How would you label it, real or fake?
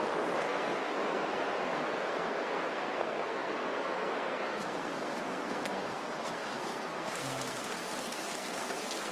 fake